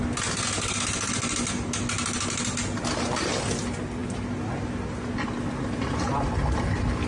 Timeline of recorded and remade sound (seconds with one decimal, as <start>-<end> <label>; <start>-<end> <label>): 0.0-7.1 recorded